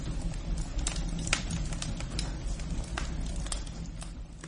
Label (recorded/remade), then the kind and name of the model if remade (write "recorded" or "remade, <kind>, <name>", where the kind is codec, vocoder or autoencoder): recorded